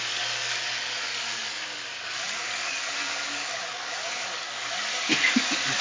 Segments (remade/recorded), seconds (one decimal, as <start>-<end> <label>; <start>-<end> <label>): 0.0-5.8 remade

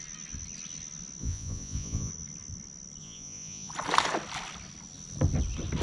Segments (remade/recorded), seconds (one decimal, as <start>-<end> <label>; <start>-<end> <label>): 0.0-1.2 recorded; 1.2-2.1 remade; 2.1-3.0 recorded; 3.0-3.7 remade; 3.7-5.8 recorded